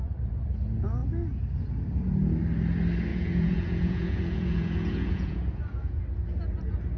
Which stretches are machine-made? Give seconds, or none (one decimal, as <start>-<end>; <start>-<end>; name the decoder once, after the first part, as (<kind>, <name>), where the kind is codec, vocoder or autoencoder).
3.1-6.0 (vocoder, Vocos)